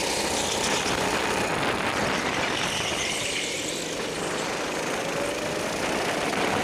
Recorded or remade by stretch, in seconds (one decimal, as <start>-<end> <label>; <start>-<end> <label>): 0.0-6.6 recorded